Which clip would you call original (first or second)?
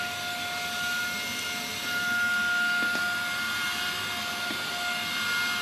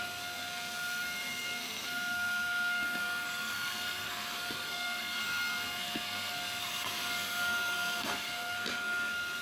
first